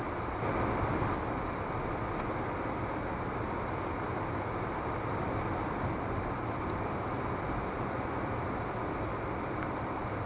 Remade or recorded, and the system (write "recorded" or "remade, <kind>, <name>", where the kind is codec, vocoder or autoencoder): recorded